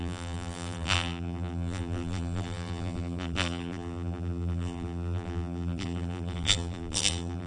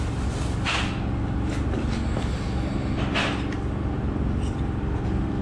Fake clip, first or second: first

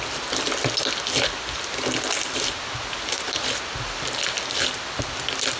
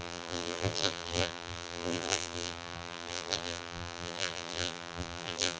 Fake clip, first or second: second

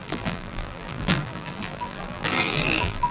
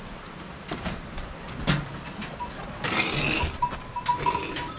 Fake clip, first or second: first